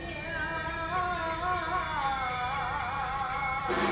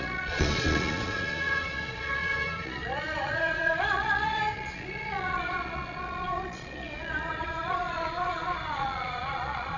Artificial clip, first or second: second